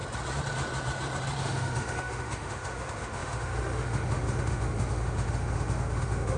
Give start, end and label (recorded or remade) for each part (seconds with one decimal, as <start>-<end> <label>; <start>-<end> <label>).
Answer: 0.0-1.4 recorded; 1.4-6.4 remade